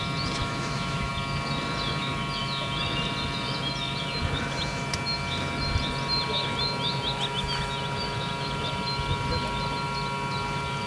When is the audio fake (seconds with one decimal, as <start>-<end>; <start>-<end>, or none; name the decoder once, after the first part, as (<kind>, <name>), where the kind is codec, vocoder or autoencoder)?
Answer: 0.4-1.1 (autoencoder, DAC-VAE)